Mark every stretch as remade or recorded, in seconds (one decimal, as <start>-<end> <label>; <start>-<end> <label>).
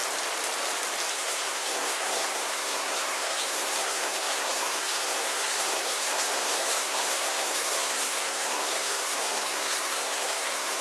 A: 0.0-1.1 recorded; 1.1-10.8 remade